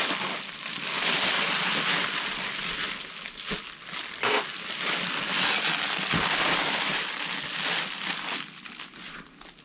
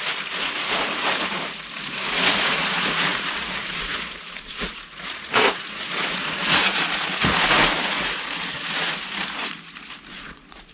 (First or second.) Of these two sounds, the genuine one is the first